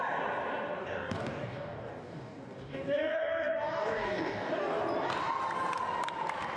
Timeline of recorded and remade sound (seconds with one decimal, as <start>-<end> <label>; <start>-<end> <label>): 0.0-0.8 recorded; 0.8-4.8 remade; 4.8-6.6 recorded